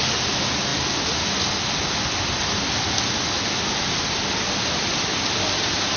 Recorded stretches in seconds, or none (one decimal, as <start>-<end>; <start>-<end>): 0.0-6.0